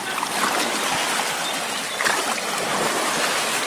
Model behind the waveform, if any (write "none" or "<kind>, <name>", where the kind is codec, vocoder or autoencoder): none